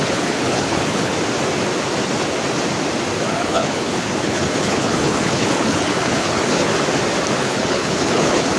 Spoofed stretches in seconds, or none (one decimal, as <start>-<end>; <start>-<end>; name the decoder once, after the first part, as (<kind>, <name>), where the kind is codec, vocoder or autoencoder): 0.0-1.1 (codec, HILCodec); 3.3-6.7; 7.4-8.6

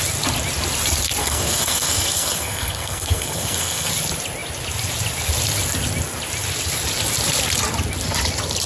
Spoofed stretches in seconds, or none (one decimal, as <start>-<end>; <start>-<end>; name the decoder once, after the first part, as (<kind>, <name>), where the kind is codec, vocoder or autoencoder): 1.2-3.9 (codec, SNAC)

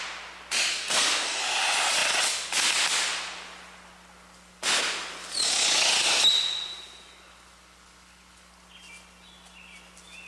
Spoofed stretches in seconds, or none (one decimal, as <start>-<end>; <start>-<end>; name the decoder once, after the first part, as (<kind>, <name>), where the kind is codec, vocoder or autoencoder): 0.7-1.4 (codec, SNAC)

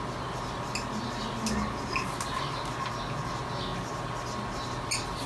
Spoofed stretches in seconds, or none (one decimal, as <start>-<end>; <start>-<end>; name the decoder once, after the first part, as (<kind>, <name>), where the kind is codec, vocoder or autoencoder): none

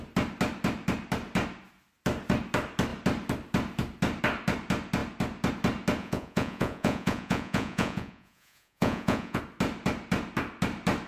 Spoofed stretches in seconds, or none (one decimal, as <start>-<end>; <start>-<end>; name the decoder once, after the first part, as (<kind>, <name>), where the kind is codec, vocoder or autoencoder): 6.0-9.4 (vocoder, Vocos)

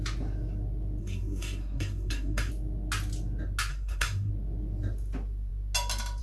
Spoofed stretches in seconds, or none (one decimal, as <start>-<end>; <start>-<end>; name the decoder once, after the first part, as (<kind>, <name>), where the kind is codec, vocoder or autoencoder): 1.0-2.5 (codec, SNAC); 3.7-4.3

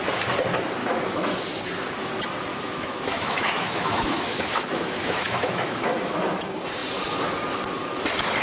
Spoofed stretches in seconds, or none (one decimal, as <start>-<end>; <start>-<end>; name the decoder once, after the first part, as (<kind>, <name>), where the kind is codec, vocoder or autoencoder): 0.8-1.3 (autoencoder, DAC-VAE); 2.5-5.9